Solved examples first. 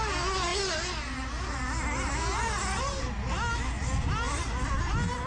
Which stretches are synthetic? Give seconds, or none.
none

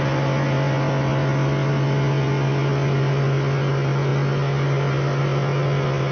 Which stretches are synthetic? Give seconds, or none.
none

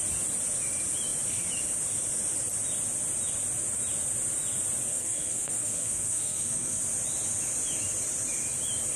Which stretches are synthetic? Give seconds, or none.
4.9-6.8 (codec, SNAC)

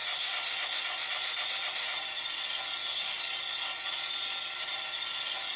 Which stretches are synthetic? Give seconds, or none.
none

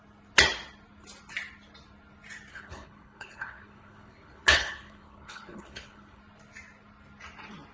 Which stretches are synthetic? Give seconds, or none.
2.5-6.2 (codec, HILCodec)